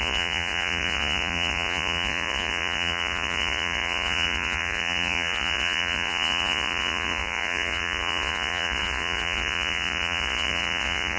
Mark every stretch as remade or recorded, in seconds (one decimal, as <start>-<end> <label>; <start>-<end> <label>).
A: 0.0-11.2 remade